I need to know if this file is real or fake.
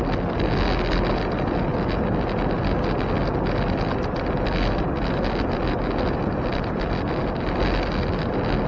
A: real